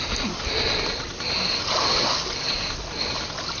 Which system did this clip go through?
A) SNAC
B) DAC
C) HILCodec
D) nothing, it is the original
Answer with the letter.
D